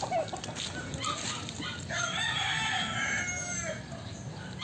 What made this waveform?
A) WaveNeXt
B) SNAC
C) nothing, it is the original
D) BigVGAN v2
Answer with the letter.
C